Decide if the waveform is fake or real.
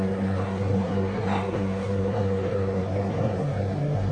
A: fake